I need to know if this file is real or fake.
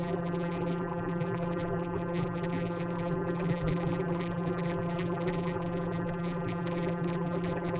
fake